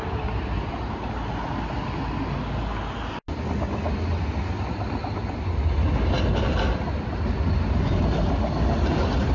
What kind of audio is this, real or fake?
real